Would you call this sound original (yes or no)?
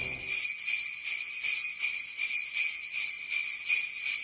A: yes